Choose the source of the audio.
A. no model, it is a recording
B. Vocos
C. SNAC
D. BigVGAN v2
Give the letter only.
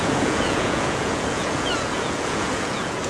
B